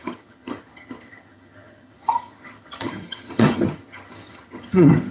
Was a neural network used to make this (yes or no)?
yes